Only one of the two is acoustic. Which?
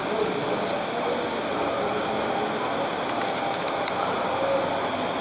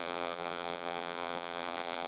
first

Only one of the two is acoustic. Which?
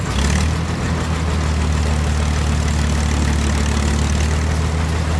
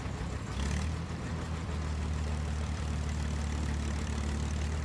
first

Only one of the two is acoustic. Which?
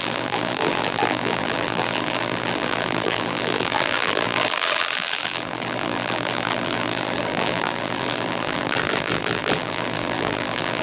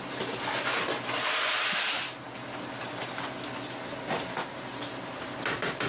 second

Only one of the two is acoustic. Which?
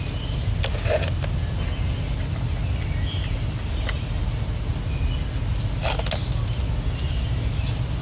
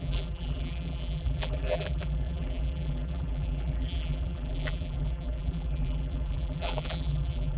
first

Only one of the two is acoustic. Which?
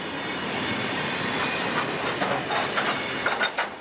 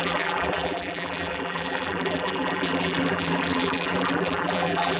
first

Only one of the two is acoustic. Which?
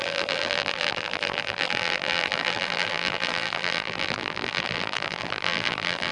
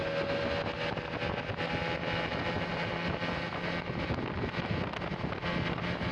second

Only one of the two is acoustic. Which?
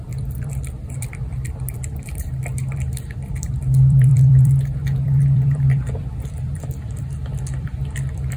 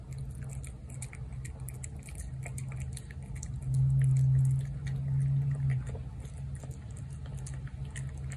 second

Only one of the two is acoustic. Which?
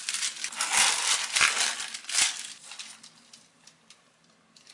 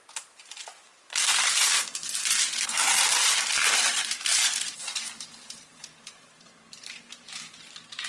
first